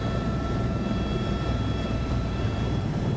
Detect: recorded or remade remade